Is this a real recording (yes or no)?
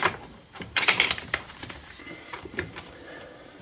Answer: no